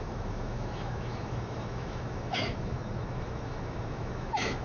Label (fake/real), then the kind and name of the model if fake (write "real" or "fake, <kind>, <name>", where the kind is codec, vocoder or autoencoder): fake, autoencoder, DAC-VAE